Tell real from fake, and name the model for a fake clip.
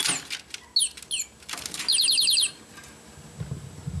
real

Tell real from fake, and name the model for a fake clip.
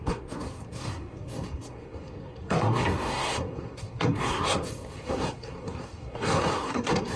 fake, codec, SNAC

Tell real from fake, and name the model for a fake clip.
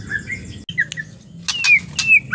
real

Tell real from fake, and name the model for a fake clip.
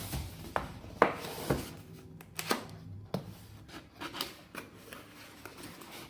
real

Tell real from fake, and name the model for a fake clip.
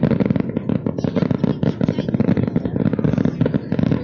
real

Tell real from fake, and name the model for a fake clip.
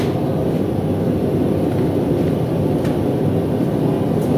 real